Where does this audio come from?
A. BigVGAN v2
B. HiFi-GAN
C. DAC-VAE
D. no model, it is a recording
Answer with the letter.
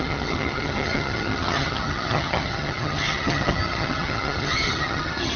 B